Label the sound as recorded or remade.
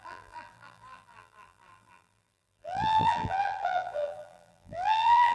remade